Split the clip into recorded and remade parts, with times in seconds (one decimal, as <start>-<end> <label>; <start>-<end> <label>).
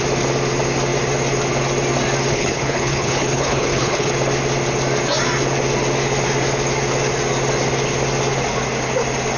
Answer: 0.0-2.3 recorded; 2.3-4.1 remade; 4.1-9.4 recorded